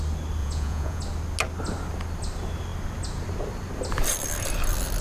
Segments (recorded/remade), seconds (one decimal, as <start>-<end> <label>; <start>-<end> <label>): 0.0-0.4 recorded; 0.4-1.0 remade; 1.0-5.0 recorded